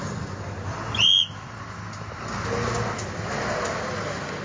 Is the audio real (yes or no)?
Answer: yes